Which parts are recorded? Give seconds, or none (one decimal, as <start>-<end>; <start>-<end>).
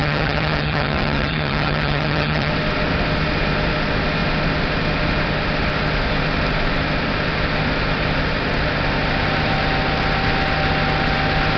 2.5-11.6